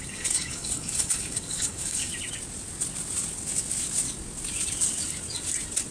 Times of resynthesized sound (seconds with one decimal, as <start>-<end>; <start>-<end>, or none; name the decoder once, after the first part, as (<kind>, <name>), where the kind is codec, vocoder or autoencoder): 0.0-2.1 (codec, DAC)